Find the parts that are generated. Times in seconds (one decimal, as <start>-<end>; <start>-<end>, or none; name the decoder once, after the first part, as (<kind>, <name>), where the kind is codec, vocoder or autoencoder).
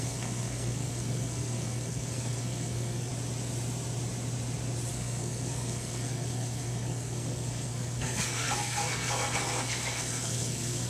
0.0-3.1 (codec, SNAC); 4.9-10.9